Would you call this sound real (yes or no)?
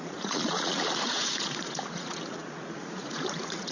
no